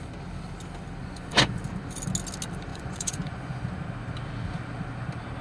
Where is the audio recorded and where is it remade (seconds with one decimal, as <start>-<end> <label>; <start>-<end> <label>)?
0.0-1.0 recorded; 1.0-1.6 remade; 1.6-2.7 recorded; 2.7-3.6 remade; 3.6-5.4 recorded